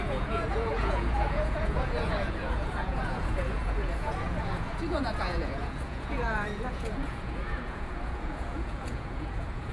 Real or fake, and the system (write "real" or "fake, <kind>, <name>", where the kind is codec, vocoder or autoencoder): fake, vocoder, Vocos